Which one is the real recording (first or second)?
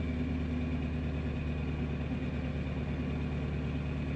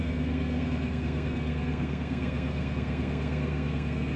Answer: first